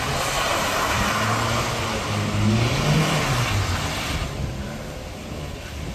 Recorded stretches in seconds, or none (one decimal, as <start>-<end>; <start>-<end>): 0.0-5.9